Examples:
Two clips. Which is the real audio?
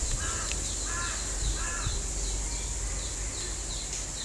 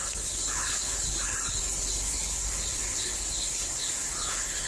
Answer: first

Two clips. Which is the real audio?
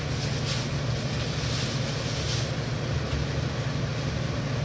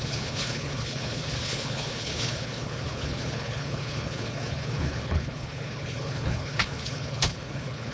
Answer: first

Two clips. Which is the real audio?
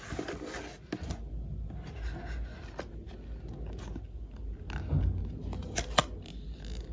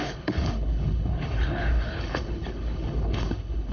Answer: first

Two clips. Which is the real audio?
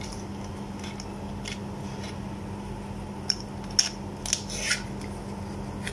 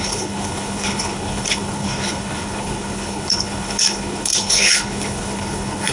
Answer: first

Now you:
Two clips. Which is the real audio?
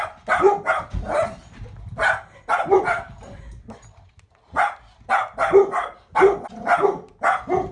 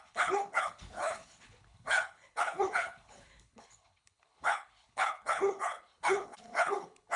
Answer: first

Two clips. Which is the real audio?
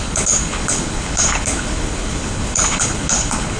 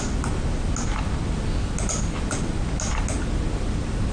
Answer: second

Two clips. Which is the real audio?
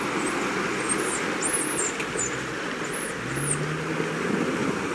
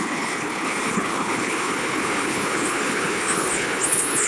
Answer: first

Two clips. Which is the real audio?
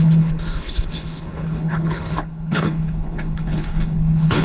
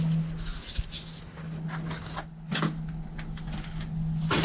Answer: second